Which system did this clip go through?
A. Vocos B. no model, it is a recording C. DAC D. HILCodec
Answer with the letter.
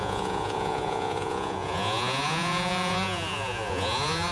A